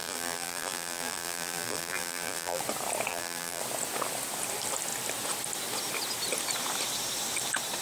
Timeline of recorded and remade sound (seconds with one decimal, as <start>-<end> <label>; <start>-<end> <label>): 0.0-2.6 remade; 2.6-3.1 recorded; 3.1-3.6 remade; 3.6-7.8 recorded